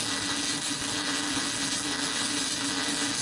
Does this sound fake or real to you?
real